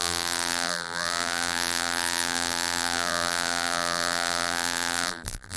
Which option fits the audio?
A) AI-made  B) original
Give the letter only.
A